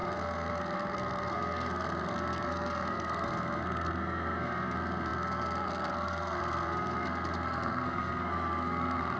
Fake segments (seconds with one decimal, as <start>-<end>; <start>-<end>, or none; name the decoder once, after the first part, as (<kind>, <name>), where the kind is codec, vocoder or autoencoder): 0.0-9.2 (codec, SNAC)